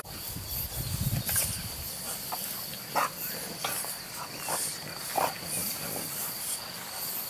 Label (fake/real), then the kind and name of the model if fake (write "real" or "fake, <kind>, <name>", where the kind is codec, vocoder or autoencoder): real